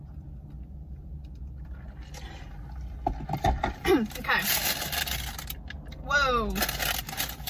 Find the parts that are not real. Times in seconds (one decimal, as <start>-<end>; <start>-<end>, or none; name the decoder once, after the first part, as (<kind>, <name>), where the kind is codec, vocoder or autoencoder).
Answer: none